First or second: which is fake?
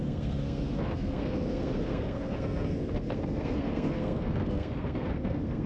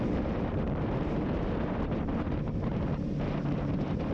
first